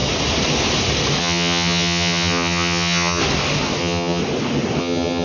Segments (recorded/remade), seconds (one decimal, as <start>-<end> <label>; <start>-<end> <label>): 0.0-1.2 recorded; 1.2-3.2 remade; 3.2-3.8 recorded; 3.8-4.2 remade; 4.2-4.8 recorded; 4.8-5.2 remade